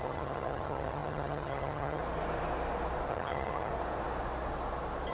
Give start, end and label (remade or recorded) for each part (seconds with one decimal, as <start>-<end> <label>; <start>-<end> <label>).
0.0-2.0 remade; 2.0-3.1 recorded; 3.1-3.7 remade; 3.7-5.1 recorded